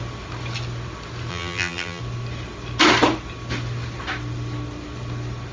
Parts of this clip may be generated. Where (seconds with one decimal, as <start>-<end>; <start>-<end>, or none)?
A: 1.3-2.0